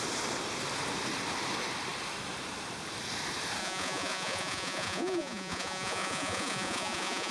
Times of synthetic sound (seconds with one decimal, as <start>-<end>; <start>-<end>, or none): 3.6-7.3